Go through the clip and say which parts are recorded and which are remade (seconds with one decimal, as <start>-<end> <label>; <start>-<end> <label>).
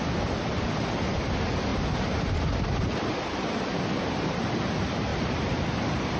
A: 0.0-5.1 remade; 5.1-6.2 recorded